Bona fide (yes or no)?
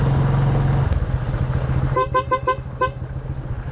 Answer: yes